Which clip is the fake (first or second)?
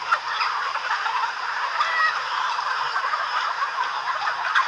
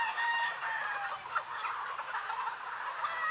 first